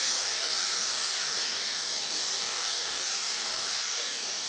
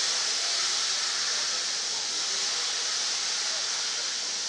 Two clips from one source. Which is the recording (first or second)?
second